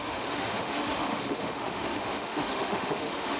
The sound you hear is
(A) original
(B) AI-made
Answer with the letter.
B